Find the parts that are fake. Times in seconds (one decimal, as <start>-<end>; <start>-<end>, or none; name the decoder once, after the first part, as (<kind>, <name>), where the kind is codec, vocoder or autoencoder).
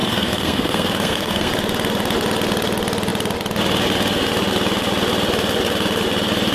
0.0-1.5 (codec, SNAC)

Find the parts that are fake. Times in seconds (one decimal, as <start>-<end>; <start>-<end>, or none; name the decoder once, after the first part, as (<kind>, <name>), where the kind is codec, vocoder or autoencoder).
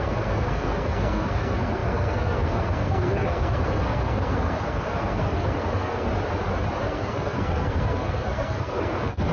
0.0-6.1 (codec, SNAC); 6.8-9.3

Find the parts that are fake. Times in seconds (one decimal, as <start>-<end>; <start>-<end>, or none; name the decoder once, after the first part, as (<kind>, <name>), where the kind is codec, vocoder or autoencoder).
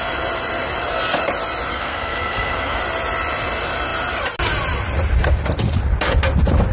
1.7-2.8 (codec, SNAC)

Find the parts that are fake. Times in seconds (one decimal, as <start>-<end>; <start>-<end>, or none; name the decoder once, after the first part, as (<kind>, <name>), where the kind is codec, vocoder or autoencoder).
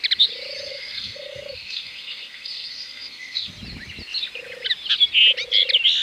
0.7-3.5 (codec, SNAC)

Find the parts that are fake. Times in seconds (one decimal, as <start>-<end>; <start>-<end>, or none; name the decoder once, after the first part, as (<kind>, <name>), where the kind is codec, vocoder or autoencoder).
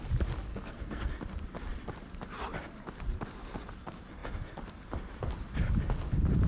0.5-1.1 (codec, SNAC)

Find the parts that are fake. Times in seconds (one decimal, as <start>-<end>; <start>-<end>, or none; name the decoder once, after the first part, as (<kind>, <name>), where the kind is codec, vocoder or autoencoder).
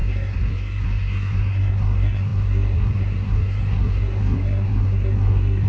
0.0-5.7 (codec, SNAC)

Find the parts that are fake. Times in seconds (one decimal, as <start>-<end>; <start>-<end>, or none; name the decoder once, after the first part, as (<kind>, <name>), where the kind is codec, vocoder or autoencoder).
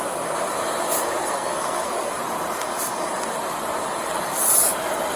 1.2-2.2 (codec, SNAC)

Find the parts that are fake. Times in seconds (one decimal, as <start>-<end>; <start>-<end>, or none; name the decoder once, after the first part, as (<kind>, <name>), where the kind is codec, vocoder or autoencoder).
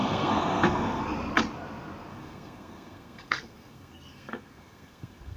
0.0-1.0 (codec, SNAC); 2.1-5.4